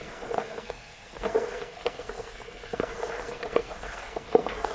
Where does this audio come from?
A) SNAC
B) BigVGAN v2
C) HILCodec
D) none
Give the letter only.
A